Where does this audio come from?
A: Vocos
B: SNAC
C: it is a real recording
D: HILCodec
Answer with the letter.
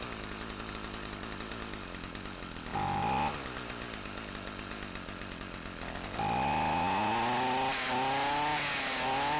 C